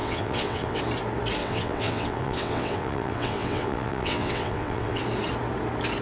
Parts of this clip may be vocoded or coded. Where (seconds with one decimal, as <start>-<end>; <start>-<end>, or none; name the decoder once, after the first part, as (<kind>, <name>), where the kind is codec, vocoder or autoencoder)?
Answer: 0.0-0.8 (vocoder, WaveNeXt); 1.4-5.0